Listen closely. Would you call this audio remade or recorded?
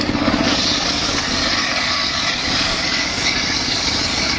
remade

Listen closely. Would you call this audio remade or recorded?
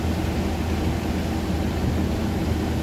recorded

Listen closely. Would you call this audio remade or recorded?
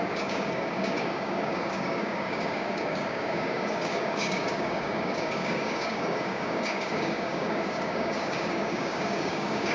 remade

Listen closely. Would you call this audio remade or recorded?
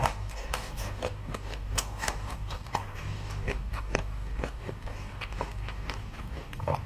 remade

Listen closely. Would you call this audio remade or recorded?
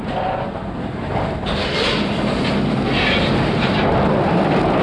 recorded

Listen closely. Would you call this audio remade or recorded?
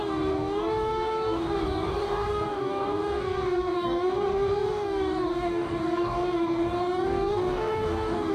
remade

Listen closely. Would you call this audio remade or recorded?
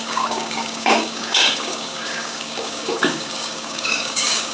remade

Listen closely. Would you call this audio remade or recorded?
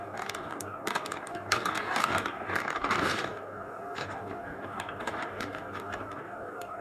remade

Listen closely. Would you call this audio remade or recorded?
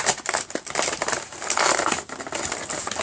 recorded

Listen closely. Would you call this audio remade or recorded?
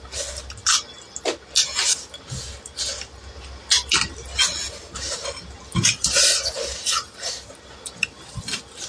recorded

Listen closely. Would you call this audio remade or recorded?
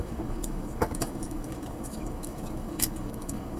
remade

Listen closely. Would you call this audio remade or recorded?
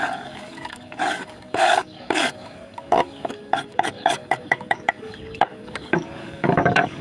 remade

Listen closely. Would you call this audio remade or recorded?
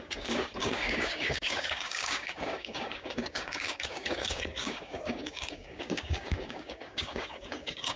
remade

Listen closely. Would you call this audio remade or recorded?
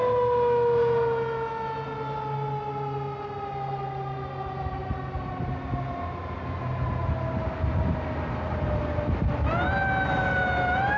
recorded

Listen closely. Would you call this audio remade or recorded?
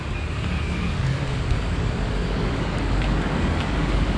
remade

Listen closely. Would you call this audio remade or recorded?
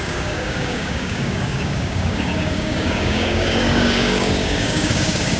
remade